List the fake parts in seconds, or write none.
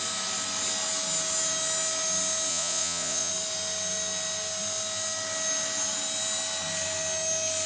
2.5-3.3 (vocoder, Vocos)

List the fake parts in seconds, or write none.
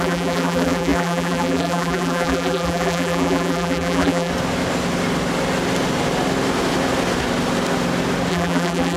0.0-4.3 (vocoder, BigVGAN v2); 8.3-9.0